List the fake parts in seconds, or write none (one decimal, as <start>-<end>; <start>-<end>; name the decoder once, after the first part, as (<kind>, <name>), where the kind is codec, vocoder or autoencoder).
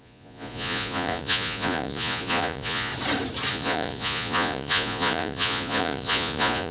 0.0-2.9 (vocoder, Vocos); 3.5-6.7